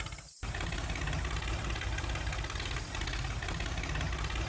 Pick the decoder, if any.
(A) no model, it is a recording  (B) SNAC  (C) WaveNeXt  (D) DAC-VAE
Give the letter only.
A